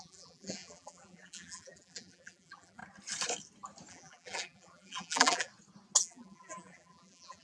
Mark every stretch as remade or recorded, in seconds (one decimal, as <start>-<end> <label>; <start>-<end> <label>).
0.0-2.8 remade; 2.8-3.9 recorded; 3.9-5.5 remade; 5.5-6.0 recorded; 6.0-7.4 remade